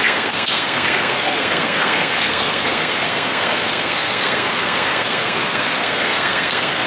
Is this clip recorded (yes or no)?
no